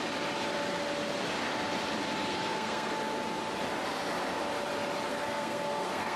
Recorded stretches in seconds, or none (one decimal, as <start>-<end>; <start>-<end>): 0.0-2.3; 2.9-5.1